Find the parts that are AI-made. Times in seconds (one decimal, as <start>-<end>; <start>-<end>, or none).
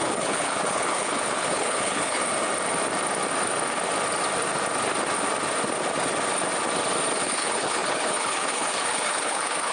0.0-2.2; 7.2-9.7